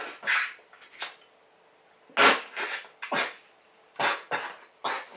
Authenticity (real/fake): real